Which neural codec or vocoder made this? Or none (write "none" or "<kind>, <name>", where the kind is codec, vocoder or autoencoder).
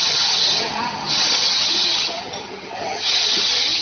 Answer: vocoder, HiFi-GAN